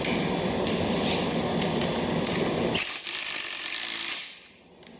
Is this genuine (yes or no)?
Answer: yes